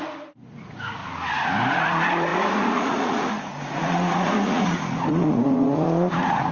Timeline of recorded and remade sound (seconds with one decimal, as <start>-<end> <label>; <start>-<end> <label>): 0.0-1.0 remade; 1.0-1.7 recorded; 1.7-6.5 remade